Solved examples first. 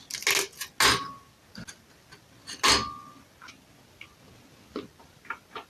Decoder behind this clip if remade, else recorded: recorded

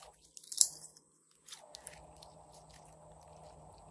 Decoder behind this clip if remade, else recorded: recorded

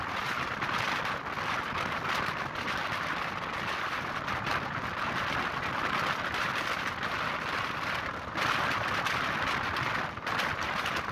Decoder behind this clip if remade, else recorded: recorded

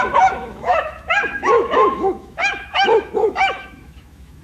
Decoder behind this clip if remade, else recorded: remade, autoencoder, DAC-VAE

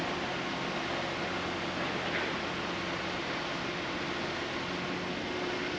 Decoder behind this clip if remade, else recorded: recorded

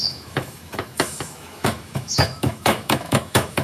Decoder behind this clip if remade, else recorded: remade, autoencoder, DAC-VAE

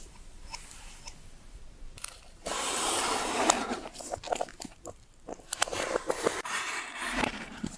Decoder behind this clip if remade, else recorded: remade, vocoder, BigVGAN v2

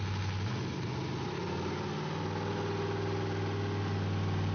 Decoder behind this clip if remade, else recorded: recorded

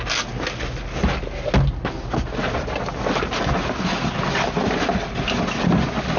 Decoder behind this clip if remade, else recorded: recorded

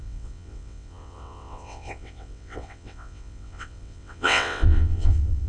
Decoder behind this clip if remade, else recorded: remade, vocoder, WaveNeXt